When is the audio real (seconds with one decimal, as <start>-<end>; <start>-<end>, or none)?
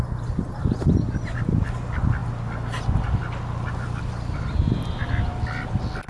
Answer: 0.0-6.1